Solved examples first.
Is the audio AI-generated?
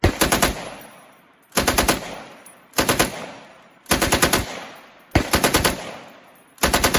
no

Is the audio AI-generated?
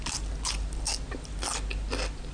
no